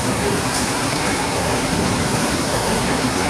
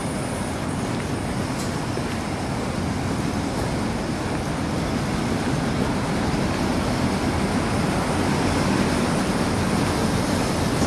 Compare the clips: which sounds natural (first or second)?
second